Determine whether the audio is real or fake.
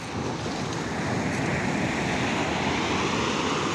real